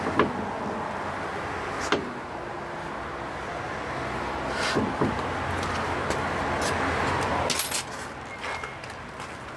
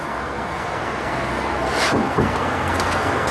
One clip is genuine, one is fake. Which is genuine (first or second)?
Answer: first